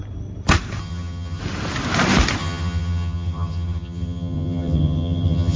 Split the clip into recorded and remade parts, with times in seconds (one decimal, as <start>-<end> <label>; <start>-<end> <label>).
0.0-0.8 recorded; 0.8-1.4 remade; 1.4-2.4 recorded; 2.4-5.6 remade